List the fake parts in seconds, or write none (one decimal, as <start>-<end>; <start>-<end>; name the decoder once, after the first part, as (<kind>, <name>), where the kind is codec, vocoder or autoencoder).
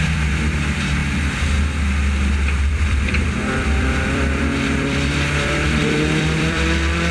0.0-1.0 (vocoder, BigVGAN v2); 2.7-7.1